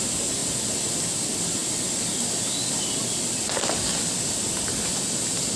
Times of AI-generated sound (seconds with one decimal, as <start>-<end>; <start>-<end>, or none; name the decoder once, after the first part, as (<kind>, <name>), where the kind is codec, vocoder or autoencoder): none

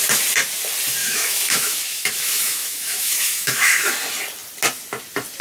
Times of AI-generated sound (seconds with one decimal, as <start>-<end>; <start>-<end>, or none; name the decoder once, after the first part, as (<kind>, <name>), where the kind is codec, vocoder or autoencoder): 1.0-3.9 (autoencoder, DAC-VAE)